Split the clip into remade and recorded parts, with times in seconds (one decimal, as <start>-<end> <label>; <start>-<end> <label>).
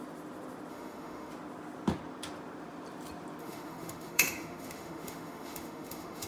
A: 0.0-0.7 recorded; 0.7-1.3 remade; 1.3-3.4 recorded; 3.4-6.3 remade